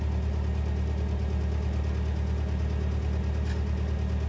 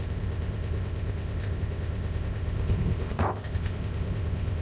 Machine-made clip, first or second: second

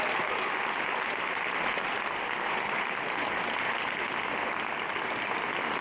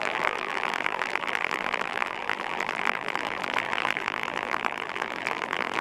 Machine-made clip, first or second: second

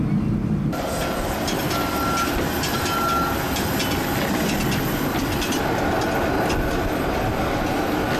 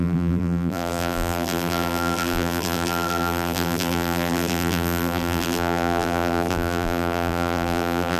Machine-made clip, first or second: second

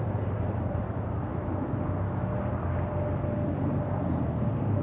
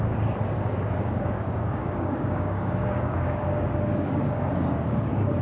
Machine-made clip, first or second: second